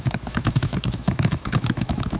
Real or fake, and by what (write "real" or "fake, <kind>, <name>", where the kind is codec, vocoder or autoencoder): fake, autoencoder, DAC-VAE